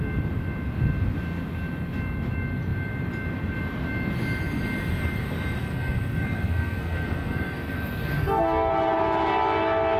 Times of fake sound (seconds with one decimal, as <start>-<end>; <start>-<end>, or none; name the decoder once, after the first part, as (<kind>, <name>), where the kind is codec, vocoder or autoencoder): 5.6-8.7 (codec, SNAC)